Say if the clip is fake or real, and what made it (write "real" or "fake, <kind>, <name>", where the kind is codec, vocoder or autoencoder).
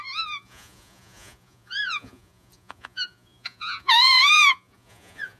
fake, vocoder, Vocos